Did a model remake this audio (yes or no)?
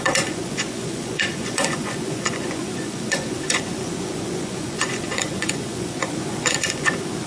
yes